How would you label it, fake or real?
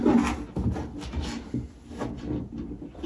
real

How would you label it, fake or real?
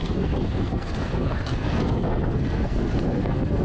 fake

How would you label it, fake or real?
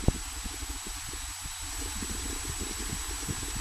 real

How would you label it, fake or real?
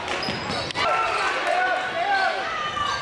real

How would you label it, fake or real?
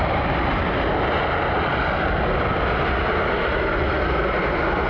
real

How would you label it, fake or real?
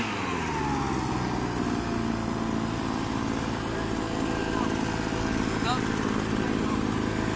real